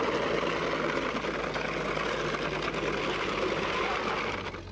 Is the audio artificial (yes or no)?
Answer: no